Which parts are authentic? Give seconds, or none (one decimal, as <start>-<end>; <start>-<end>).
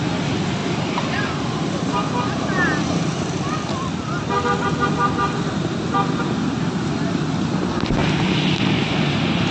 0.0-9.5